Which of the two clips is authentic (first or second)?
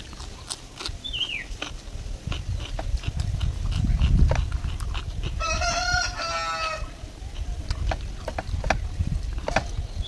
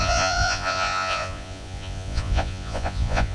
first